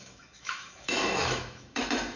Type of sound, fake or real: fake